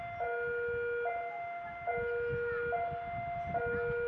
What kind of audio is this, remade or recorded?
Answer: recorded